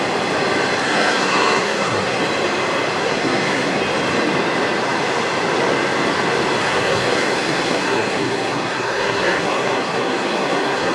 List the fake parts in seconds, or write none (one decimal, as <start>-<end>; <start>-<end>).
0.8-2.2; 3.0-3.8; 6.6-10.9